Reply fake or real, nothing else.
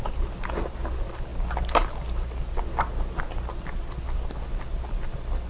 real